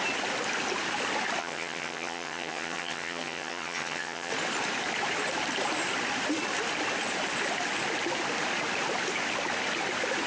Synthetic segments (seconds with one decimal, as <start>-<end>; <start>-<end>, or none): 1.4-4.3